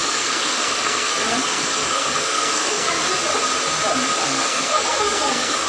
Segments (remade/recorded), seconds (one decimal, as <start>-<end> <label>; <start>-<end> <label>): 0.0-3.0 remade; 3.0-4.2 recorded; 4.2-5.7 remade